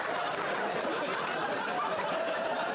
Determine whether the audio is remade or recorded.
recorded